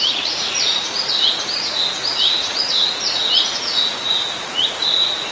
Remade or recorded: remade